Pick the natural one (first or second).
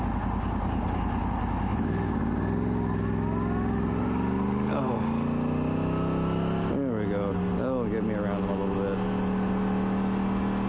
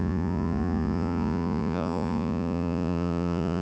first